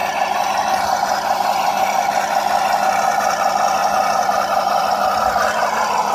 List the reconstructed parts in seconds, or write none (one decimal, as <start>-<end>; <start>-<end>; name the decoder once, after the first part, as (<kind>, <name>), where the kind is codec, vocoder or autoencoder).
0.0-1.9 (vocoder, BigVGAN v2); 3.8-4.8